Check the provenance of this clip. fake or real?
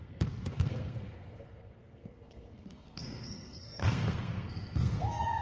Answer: fake